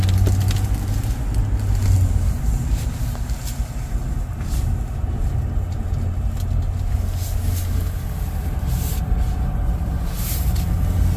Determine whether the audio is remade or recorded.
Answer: recorded